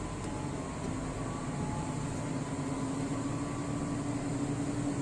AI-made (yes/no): no